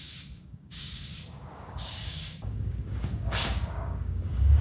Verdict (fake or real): fake